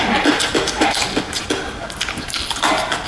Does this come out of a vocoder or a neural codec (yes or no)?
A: no